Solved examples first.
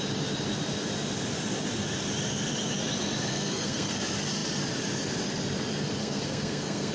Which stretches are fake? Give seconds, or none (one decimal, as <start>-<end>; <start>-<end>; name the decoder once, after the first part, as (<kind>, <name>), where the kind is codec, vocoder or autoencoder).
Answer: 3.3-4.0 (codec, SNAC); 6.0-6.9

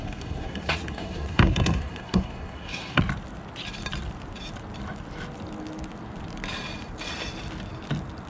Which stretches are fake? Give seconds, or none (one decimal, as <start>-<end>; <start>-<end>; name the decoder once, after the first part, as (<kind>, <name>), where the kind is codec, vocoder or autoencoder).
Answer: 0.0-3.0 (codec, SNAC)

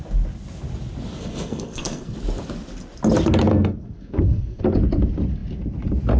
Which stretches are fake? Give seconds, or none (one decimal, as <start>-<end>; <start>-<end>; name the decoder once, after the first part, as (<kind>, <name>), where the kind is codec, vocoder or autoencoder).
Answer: 1.1-2.2 (codec, SNAC); 3.5-4.6

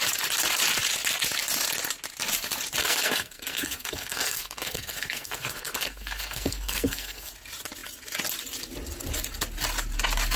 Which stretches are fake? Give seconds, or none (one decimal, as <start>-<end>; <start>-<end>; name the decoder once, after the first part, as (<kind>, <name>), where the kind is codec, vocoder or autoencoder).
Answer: 2.8-7.3 (codec, SNAC)

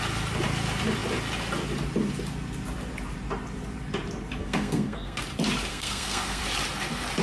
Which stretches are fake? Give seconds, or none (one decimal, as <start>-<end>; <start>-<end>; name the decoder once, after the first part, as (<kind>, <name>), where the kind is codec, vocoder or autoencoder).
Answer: 4.4-5.2 (codec, SNAC); 5.7-6.4

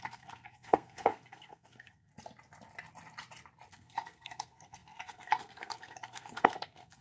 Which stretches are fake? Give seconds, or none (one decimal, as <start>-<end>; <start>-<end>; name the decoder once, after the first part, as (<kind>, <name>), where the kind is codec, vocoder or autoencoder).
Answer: 0.0-2.1 (codec, SNAC); 3.7-7.0

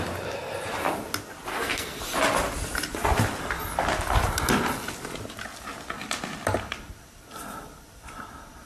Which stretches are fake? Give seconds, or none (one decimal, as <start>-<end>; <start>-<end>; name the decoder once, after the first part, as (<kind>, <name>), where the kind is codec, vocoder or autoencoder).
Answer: 1.5-2.0 (codec, SNAC)